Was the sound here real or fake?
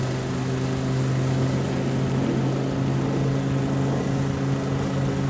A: real